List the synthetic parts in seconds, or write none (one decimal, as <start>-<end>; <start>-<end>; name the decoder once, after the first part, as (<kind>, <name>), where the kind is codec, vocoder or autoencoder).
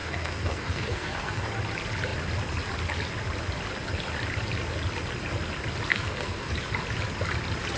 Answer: 0.0-1.5 (codec, SNAC); 5.9-6.5